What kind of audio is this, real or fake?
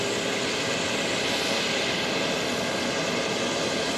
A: real